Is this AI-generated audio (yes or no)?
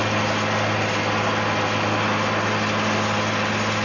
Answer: no